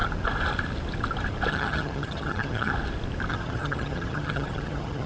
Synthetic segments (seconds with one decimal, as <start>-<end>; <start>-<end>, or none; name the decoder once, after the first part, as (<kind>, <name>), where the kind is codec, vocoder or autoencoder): 1.5-2.7 (vocoder, HiFi-GAN); 3.3-5.1